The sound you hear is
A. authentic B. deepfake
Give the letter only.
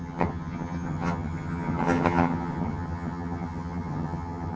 B